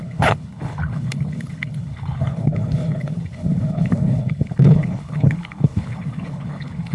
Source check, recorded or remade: remade